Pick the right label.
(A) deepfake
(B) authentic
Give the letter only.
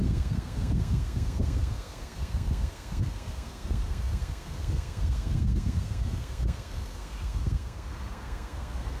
A